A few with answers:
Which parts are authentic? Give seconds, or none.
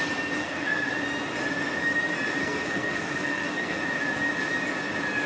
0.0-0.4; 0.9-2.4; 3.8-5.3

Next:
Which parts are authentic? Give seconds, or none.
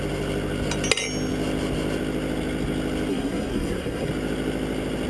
0.0-3.1; 4.1-5.1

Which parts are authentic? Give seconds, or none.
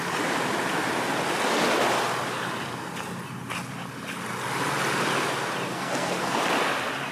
0.0-5.7; 6.4-7.1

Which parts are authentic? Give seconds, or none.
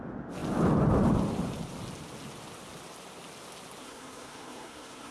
0.0-3.8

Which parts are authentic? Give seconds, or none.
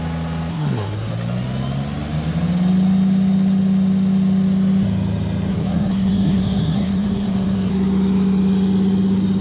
0.0-0.5; 1.1-5.5; 7.7-9.4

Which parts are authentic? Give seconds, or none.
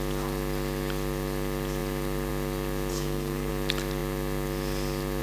0.0-2.9; 3.5-5.2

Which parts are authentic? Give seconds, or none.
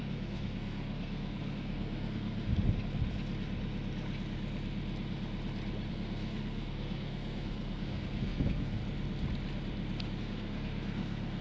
2.5-5.9; 8.8-10.2